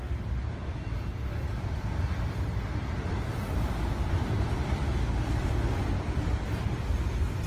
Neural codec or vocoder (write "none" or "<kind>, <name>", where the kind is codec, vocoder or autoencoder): none